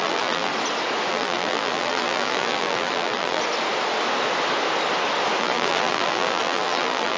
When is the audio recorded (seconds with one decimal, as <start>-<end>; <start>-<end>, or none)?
0.5-1.1; 3.4-5.4